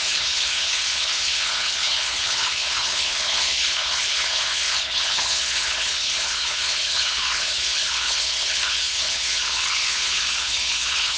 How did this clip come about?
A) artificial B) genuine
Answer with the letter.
A